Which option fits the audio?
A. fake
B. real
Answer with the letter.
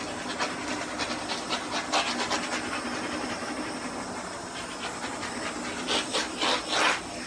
B